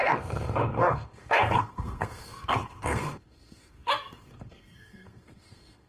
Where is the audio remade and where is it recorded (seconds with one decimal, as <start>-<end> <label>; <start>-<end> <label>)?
0.0-5.9 remade